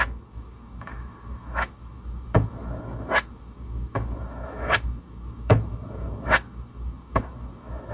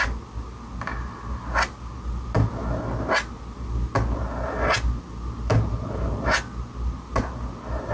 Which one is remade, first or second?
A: first